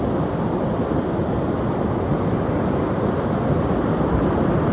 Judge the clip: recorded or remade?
recorded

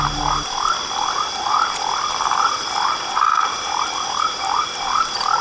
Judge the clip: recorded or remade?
recorded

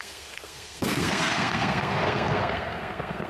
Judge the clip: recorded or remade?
remade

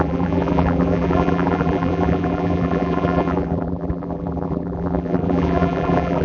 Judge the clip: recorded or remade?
remade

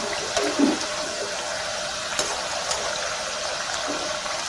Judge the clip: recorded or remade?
recorded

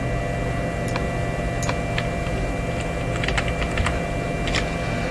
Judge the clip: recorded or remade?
recorded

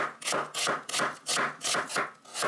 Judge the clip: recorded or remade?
recorded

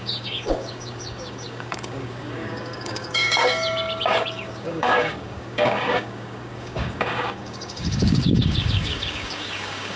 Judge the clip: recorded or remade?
remade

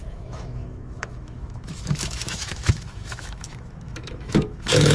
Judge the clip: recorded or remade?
remade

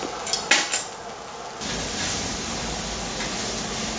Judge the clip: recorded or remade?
recorded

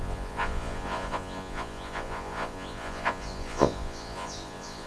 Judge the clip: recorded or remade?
remade